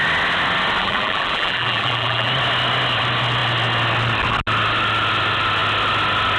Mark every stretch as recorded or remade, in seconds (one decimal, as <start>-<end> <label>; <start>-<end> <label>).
0.0-0.8 recorded; 0.8-2.3 remade; 2.3-6.4 recorded